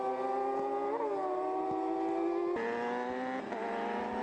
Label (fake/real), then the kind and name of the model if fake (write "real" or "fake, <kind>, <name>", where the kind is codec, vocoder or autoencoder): real